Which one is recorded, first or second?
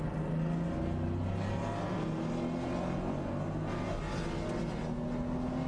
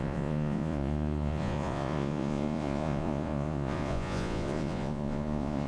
first